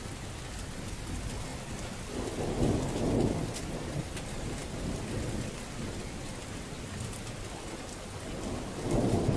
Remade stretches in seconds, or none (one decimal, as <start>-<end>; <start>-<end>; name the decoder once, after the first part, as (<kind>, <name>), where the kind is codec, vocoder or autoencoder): none